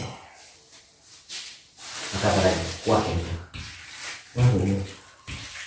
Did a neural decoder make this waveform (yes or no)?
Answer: no